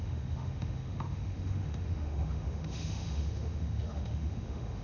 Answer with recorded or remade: remade